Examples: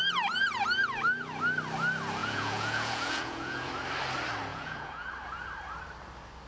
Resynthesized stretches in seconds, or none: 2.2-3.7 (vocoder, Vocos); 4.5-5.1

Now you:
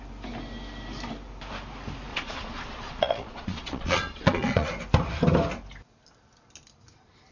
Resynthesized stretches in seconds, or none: 2.1-4.7 (vocoder, Vocos)

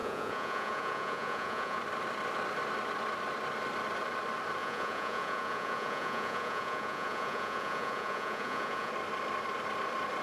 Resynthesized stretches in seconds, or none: 0.0-1.8 (vocoder, Vocos); 4.6-8.9

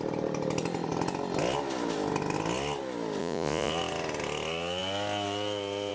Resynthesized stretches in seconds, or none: 3.2-3.7 (vocoder, Vocos)

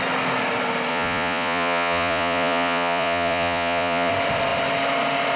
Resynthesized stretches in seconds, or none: 0.9-4.1 (vocoder, Vocos)